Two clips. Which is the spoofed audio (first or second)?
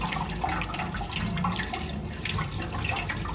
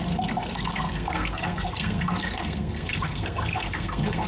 second